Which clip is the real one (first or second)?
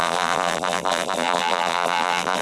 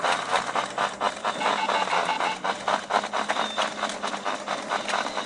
second